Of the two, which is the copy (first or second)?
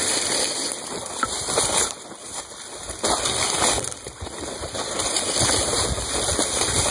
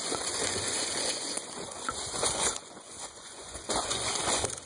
second